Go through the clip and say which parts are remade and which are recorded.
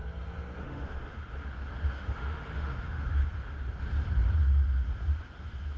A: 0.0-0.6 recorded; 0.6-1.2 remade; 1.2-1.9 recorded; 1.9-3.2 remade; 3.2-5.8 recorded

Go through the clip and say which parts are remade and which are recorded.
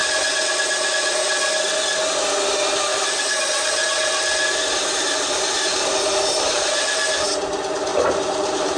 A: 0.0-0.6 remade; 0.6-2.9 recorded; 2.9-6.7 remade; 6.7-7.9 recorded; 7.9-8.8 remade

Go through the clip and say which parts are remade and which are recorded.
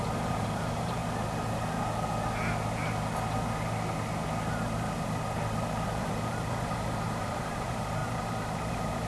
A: 0.0-1.0 remade; 1.0-6.0 recorded; 6.0-9.1 remade